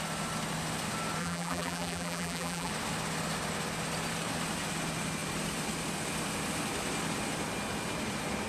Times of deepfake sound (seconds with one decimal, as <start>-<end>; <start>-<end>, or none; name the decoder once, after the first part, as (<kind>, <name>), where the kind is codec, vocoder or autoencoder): 1.2-2.7 (vocoder, BigVGAN v2)